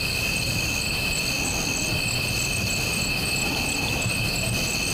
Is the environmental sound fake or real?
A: real